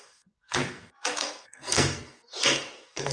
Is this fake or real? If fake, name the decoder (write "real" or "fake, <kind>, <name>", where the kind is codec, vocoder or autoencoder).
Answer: fake, codec, SNAC